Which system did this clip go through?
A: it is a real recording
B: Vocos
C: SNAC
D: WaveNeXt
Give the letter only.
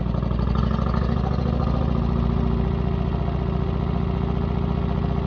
A